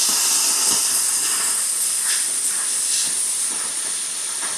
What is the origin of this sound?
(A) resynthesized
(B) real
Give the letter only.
B